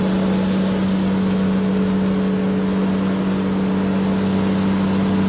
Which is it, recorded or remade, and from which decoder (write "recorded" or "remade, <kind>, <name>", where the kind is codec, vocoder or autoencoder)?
recorded